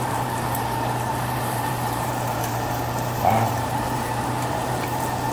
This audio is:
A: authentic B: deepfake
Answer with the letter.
B